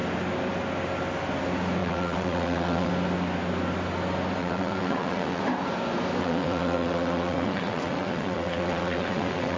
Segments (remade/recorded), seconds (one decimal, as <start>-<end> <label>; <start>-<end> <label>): 0.0-1.8 recorded; 1.8-2.9 remade; 2.9-4.4 recorded; 4.4-5.4 remade; 5.4-6.2 recorded; 6.2-9.6 remade